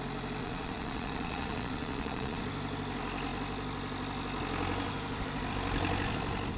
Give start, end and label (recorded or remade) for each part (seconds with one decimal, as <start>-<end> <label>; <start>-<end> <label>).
0.0-0.4 recorded; 0.4-2.4 remade; 2.4-6.6 recorded